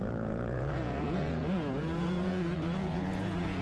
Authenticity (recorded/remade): remade